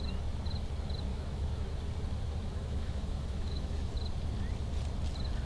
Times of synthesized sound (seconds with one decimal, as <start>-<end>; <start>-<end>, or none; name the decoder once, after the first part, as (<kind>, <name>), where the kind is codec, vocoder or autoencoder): 1.1-1.7 (autoencoder, DAC-VAE); 2.4-3.9